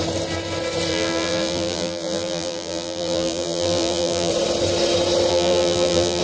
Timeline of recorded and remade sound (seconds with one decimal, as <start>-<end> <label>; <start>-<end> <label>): 0.0-0.9 recorded; 0.9-4.3 remade; 4.3-5.3 recorded; 5.3-6.2 remade